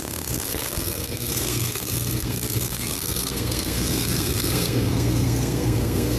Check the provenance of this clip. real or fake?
fake